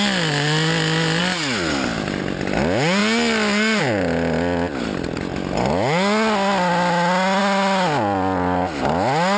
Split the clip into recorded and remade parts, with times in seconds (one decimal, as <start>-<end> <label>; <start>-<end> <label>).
0.0-9.4 recorded